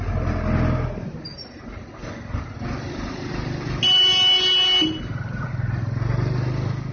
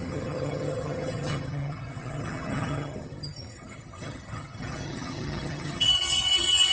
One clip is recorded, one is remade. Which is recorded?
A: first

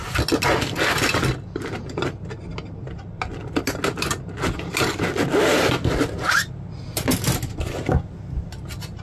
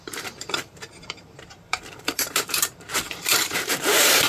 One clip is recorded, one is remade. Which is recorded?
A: first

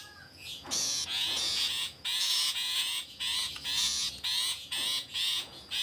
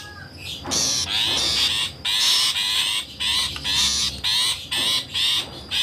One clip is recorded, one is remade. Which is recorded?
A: second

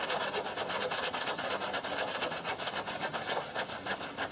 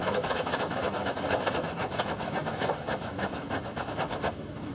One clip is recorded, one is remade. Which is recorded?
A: first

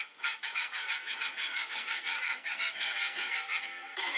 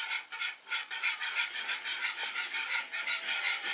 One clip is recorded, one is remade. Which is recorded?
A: second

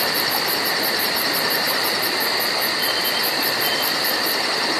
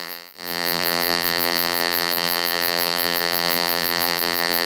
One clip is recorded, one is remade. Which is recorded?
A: first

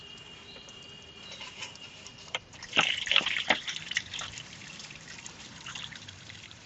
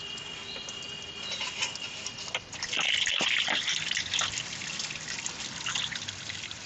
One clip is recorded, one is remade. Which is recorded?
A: second